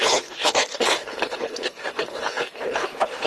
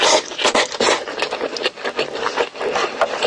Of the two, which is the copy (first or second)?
first